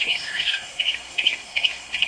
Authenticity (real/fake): fake